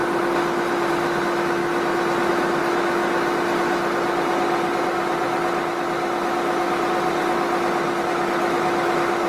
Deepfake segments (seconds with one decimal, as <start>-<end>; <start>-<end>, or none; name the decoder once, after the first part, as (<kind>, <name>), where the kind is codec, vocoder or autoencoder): 0.9-1.6 (autoencoder, DAC-VAE); 2.3-3.0; 8.0-9.3